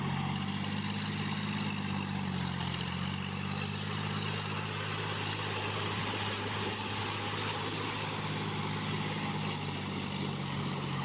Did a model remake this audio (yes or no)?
no